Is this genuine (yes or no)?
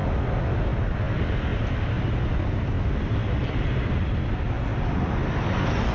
yes